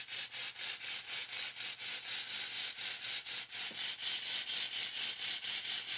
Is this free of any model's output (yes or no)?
yes